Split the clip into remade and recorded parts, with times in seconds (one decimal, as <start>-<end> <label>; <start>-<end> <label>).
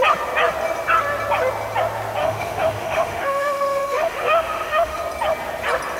0.0-2.2 recorded; 2.2-5.0 remade; 5.0-6.0 recorded